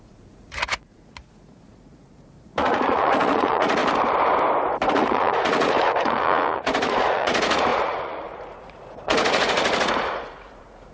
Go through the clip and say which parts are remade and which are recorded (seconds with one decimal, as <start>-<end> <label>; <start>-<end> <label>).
0.0-3.8 remade; 3.8-4.9 recorded; 4.9-10.9 remade